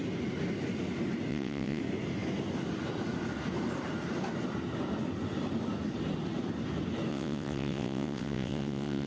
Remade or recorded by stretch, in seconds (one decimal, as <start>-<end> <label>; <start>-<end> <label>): 0.0-1.3 recorded; 1.3-1.8 remade; 1.8-7.1 recorded; 7.1-9.1 remade